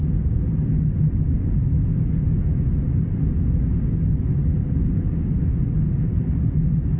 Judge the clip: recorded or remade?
recorded